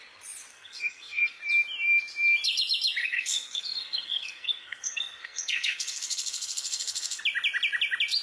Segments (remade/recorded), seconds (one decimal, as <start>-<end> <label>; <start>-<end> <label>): 0.0-0.5 recorded; 0.5-1.4 remade; 1.4-3.0 recorded; 3.0-7.2 remade; 7.2-8.2 recorded